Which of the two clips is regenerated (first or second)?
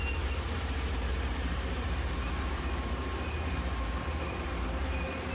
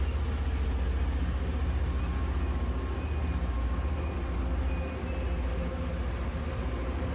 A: first